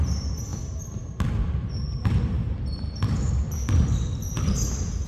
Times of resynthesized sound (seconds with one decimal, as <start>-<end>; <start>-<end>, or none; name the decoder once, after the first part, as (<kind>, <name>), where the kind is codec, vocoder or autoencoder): none